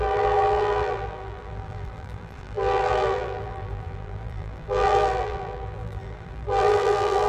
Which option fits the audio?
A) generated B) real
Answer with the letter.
A